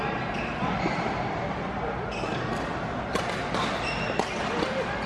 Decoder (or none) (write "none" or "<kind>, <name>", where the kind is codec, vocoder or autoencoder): none